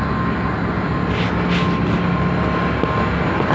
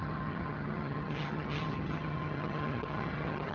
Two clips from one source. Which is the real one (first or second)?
first